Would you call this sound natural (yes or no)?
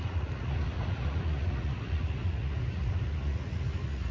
no